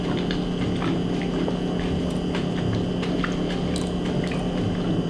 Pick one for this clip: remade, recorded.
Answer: recorded